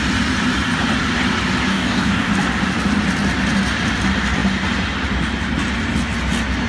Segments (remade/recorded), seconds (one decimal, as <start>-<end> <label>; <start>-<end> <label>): 0.0-1.7 recorded; 1.7-2.3 remade; 2.3-6.7 recorded